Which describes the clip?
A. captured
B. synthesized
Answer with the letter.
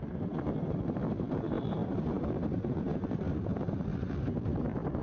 B